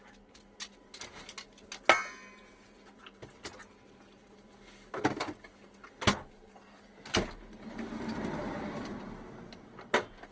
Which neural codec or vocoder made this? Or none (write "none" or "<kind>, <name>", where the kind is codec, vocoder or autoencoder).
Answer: none